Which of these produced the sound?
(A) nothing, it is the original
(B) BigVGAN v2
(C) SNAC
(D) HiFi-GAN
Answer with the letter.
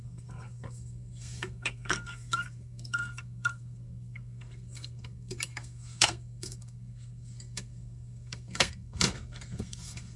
C